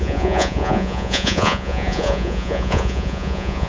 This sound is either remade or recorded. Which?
remade